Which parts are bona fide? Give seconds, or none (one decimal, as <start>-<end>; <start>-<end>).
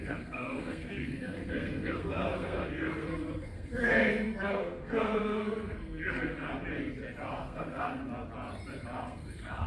6.5-7.3; 8.0-9.0